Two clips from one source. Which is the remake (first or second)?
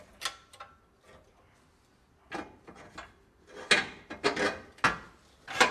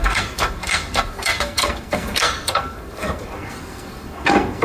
second